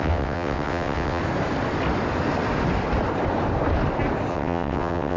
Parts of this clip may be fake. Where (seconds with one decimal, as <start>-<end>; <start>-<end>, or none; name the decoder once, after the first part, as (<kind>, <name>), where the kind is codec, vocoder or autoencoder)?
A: 0.0-1.2 (vocoder, WaveNeXt); 4.3-5.2